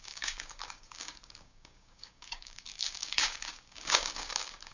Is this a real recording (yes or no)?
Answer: no